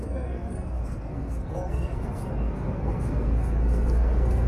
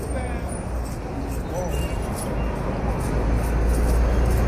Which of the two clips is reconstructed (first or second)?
first